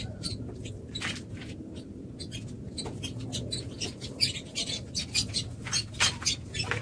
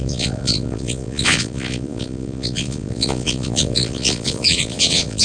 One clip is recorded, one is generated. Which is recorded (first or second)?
first